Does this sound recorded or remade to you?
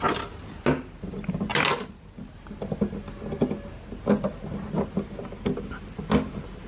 recorded